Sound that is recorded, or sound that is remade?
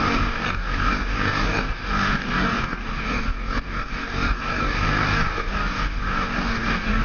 remade